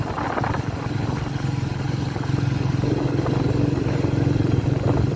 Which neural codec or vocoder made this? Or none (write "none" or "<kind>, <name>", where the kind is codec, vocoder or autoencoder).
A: none